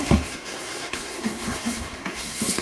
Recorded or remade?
remade